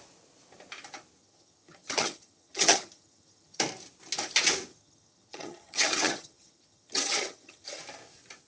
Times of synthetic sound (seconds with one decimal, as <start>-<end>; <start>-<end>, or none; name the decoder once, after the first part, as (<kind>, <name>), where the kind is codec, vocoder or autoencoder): 1.2-3.6 (vocoder, HiFi-GAN); 4.7-7.8